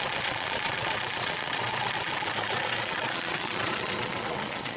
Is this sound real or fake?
fake